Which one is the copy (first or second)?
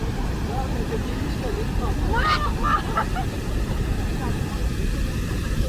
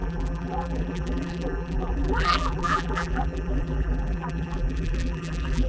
second